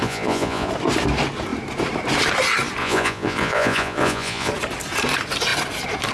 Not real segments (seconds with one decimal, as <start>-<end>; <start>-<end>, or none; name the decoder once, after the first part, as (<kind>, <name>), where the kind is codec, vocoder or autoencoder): 0.0-0.7 (vocoder, Vocos); 2.8-4.5